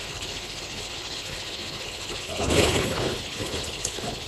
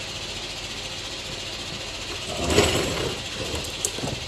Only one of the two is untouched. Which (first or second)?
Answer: second